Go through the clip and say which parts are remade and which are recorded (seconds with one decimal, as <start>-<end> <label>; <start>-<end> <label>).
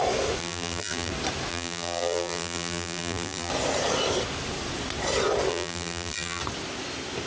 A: 0.0-0.4 recorded; 0.4-1.1 remade; 1.1-1.5 recorded; 1.5-3.5 remade; 3.5-5.5 recorded; 5.5-6.4 remade; 6.4-7.3 recorded